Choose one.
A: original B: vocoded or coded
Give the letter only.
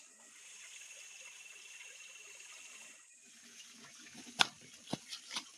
A